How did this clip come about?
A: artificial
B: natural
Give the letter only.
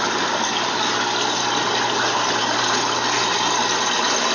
B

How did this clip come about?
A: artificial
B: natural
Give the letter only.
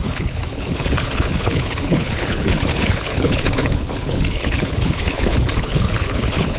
A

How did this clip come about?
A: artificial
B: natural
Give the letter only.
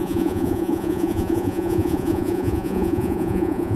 A